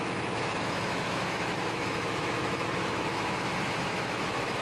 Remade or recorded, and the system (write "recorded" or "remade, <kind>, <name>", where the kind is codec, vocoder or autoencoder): remade, autoencoder, DAC-VAE